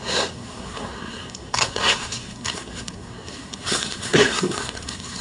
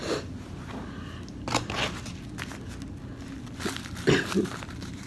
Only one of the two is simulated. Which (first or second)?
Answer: first